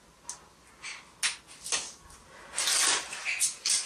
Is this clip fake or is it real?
real